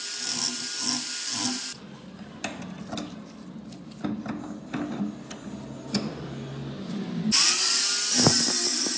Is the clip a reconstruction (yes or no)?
no